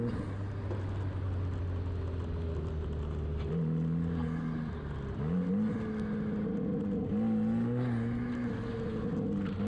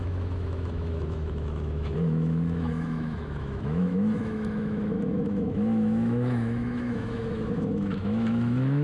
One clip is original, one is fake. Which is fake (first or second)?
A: second